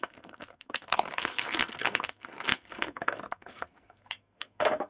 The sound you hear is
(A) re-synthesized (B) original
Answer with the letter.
A